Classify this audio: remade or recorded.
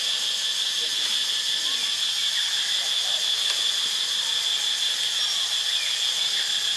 recorded